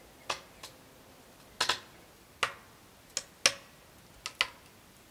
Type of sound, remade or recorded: recorded